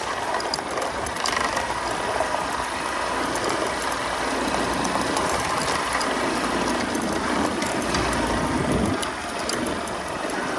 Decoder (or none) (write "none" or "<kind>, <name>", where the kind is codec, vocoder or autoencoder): none